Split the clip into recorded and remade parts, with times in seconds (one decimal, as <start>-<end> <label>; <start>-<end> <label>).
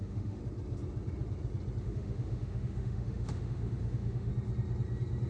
0.0-0.4 remade; 0.4-1.8 recorded; 1.8-4.3 remade; 4.3-5.3 recorded